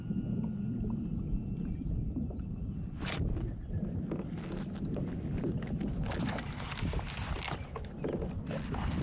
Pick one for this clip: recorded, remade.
recorded